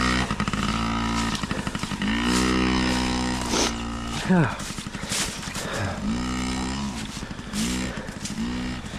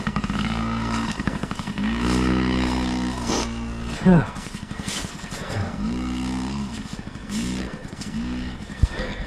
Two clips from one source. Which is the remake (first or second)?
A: second